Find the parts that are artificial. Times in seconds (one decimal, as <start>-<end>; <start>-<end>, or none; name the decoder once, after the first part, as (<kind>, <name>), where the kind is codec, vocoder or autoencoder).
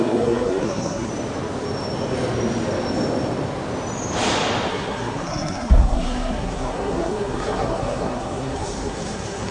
0.0-1.1 (codec, SNAC); 4.7-9.5